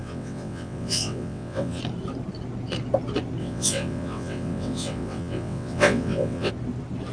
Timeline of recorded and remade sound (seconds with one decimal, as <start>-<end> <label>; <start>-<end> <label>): 0.0-1.8 remade; 1.8-3.4 recorded; 3.4-6.5 remade; 6.5-7.1 recorded